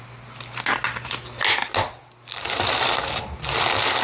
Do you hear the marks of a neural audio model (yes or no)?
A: no